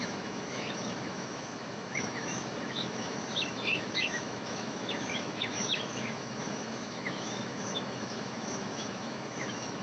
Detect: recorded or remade remade